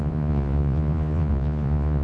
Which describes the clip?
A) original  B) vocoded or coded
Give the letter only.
B